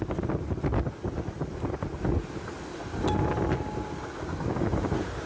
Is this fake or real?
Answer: real